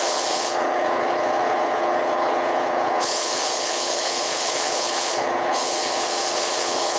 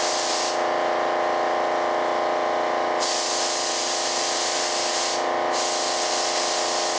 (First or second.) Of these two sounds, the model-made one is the first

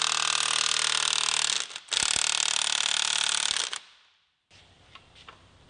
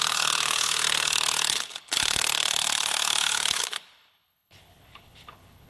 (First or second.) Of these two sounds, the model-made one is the second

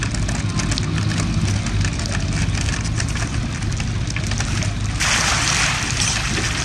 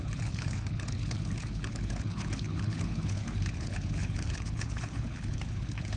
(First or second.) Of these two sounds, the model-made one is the second